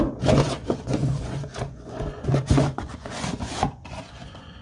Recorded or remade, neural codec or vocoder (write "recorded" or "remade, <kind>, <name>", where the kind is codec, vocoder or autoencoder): remade, vocoder, Vocos